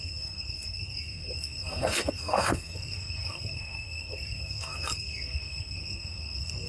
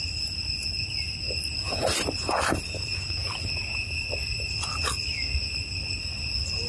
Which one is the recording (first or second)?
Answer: second